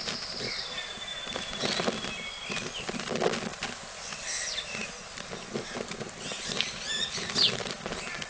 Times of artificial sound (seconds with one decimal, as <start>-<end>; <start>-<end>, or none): 0.0-3.5; 5.5-8.3